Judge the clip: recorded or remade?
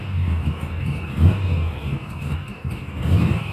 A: remade